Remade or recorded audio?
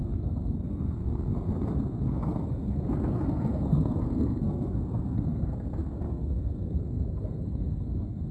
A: remade